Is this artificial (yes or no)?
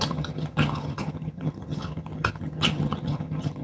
yes